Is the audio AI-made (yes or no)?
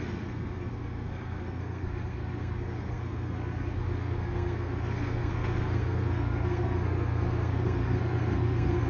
yes